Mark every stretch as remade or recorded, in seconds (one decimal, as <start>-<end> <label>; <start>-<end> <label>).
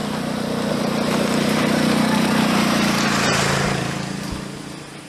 0.0-0.7 recorded; 0.7-5.1 remade